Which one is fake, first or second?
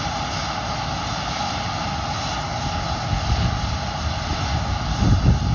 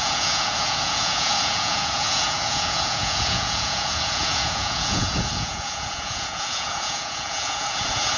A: second